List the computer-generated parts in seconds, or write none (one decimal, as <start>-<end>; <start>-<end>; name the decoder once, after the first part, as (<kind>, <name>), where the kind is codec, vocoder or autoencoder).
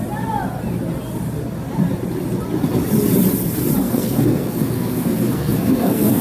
3.8-6.2 (codec, SNAC)